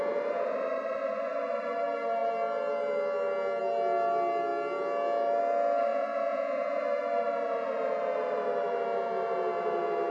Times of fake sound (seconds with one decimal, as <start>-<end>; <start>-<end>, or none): 5.9-6.8